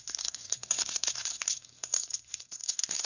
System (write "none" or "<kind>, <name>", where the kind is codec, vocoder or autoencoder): codec, SNAC